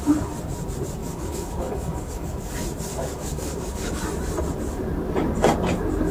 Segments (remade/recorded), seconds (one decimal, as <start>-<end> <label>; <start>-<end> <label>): 0.0-1.0 recorded; 1.0-2.5 remade; 2.5-2.9 recorded; 2.9-4.0 remade; 4.0-6.1 recorded